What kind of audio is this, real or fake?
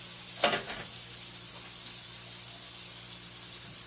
real